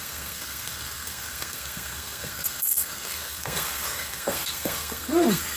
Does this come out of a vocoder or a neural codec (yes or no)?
yes